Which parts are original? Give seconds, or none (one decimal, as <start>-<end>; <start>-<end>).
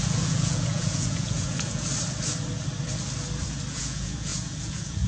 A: 1.9-3.7